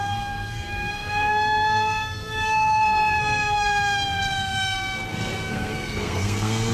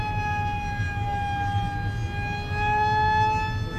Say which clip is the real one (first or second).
second